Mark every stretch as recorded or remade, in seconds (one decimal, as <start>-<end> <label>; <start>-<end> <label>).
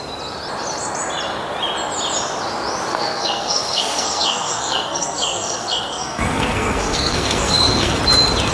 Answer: 0.0-2.9 recorded; 2.9-8.0 remade; 8.0-8.5 recorded